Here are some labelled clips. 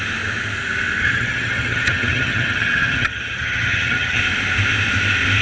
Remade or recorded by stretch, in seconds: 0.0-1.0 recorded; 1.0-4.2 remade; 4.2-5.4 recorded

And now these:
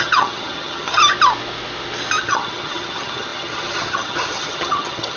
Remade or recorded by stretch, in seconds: 0.0-1.0 remade; 1.0-2.2 recorded; 2.2-5.2 remade